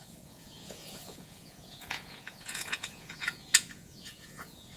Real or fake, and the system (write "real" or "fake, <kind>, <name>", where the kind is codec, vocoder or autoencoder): fake, vocoder, Vocos